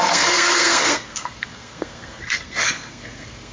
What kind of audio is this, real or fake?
fake